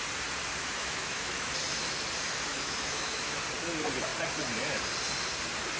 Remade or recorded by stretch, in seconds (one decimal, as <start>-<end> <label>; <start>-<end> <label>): 0.0-0.6 recorded; 0.6-1.5 remade; 1.5-2.5 recorded; 2.5-3.4 remade; 3.4-5.8 recorded